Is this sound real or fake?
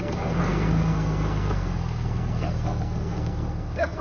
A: fake